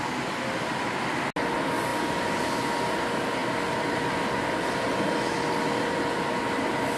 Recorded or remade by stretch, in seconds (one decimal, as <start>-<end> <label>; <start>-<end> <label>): 0.0-7.0 recorded